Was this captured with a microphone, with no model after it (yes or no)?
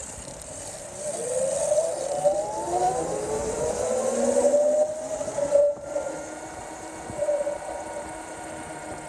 yes